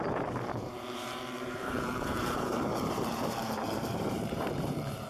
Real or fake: fake